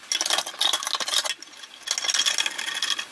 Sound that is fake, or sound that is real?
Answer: real